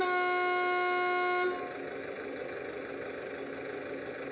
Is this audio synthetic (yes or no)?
no